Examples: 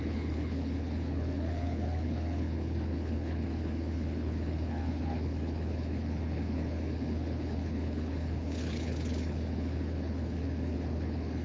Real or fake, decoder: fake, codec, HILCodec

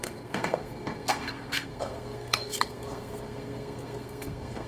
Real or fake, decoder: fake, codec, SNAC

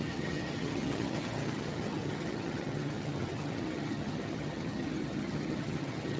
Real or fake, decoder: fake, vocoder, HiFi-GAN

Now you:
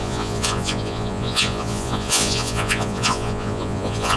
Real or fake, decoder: fake, vocoder, Vocos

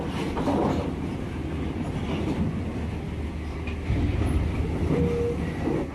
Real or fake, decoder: real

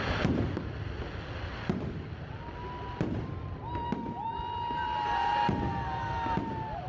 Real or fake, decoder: real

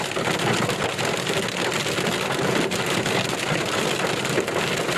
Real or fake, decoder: real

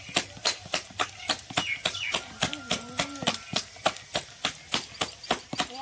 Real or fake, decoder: real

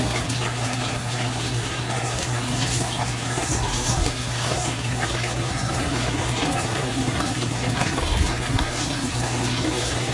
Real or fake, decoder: fake, codec, SNAC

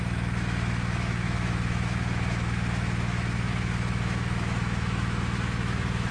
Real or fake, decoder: fake, autoencoder, DAC-VAE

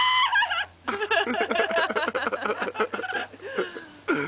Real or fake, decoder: real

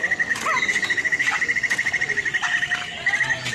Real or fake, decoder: real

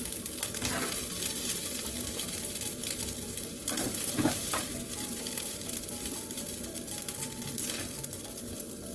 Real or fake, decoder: fake, vocoder, BigVGAN v2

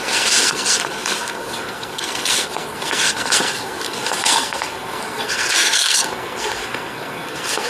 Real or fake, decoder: fake, codec, SNAC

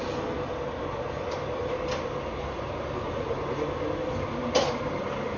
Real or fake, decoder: real